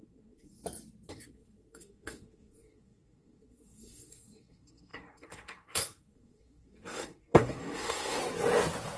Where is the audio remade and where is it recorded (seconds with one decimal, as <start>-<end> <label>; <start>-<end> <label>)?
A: 0.0-0.6 remade; 0.6-1.1 recorded; 1.1-8.2 remade; 8.2-9.0 recorded